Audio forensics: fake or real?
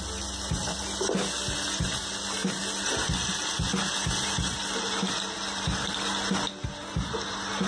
real